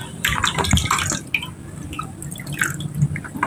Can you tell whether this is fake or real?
real